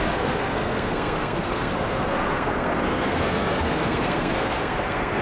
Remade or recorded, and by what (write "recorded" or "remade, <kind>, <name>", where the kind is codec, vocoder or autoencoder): remade, codec, SNAC